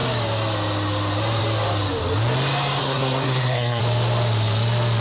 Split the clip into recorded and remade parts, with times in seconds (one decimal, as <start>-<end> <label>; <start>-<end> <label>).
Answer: 0.0-2.8 recorded; 2.8-3.8 remade; 3.8-5.0 recorded